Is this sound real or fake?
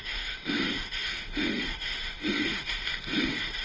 fake